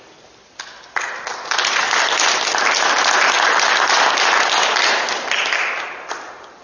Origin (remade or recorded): recorded